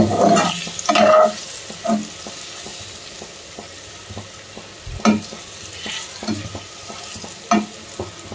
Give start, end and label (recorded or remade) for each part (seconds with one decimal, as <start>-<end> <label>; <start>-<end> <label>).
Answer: 0.0-8.3 recorded